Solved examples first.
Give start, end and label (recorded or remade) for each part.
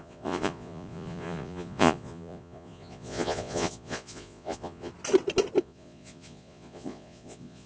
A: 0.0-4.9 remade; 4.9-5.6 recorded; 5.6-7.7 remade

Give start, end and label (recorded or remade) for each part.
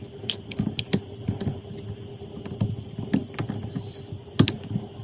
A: 0.0-5.0 recorded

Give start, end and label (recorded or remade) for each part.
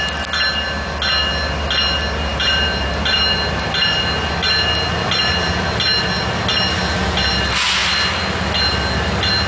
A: 0.0-2.3 recorded; 2.3-2.9 remade; 2.9-9.5 recorded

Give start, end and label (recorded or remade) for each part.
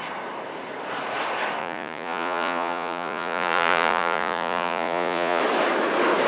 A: 0.0-1.6 recorded; 1.6-5.4 remade; 5.4-6.3 recorded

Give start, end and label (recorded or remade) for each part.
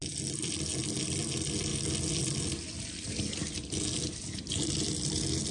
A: 0.0-5.5 recorded